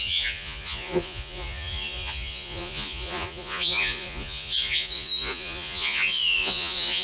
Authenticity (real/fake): fake